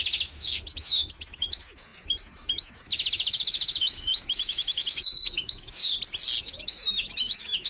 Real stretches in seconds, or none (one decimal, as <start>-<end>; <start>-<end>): 5.8-6.4